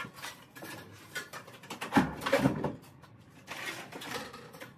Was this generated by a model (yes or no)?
yes